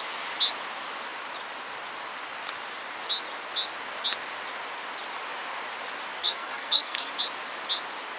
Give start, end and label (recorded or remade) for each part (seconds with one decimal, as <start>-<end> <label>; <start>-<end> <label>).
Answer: 0.0-6.2 recorded; 6.2-7.1 remade; 7.1-8.2 recorded